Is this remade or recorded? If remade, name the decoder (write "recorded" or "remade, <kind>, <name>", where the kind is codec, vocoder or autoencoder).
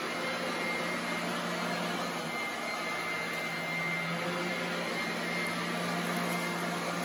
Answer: recorded